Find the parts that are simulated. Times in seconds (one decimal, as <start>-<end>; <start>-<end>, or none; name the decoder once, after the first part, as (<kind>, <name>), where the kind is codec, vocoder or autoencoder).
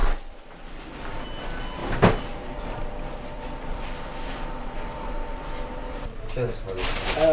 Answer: 0.0-0.7 (vocoder, BigVGAN v2); 1.8-6.2